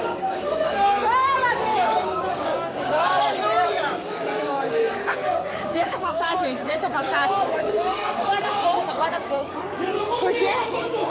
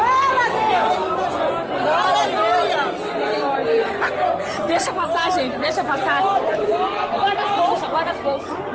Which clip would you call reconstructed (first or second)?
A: first